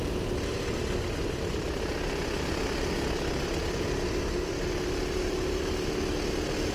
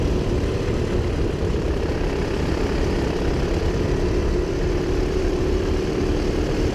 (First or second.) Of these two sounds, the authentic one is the first